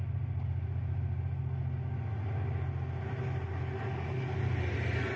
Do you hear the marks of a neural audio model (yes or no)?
no